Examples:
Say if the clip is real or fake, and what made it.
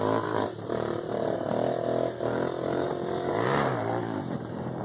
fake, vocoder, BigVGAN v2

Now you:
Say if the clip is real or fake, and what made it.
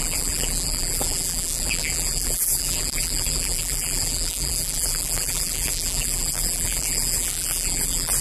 fake, vocoder, BigVGAN v2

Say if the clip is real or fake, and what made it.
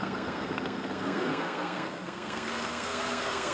fake, codec, SNAC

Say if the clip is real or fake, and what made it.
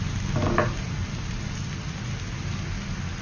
real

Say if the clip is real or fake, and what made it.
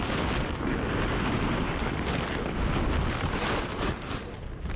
real